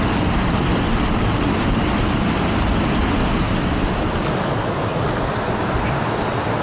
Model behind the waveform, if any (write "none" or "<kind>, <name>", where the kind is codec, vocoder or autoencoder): none